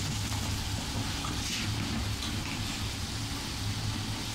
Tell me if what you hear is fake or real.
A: real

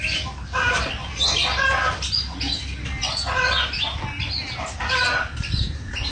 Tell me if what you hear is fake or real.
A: real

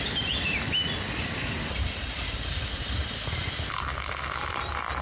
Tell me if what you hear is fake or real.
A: fake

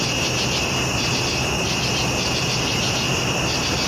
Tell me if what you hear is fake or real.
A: real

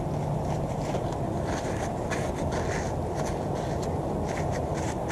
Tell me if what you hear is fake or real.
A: real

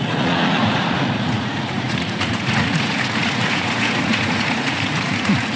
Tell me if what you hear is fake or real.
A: fake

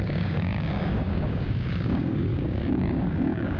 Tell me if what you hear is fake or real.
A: fake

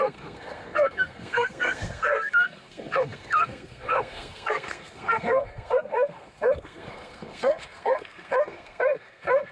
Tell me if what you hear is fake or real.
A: fake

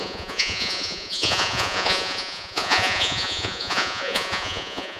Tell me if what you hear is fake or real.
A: fake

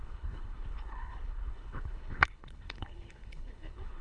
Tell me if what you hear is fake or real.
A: fake